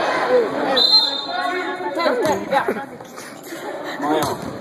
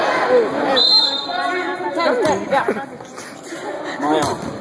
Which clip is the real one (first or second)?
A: second